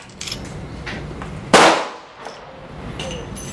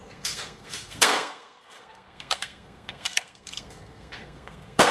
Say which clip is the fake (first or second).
second